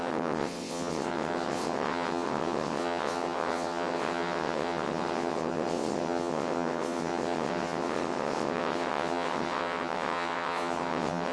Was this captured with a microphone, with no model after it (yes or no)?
no